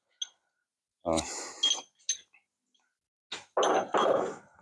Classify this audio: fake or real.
real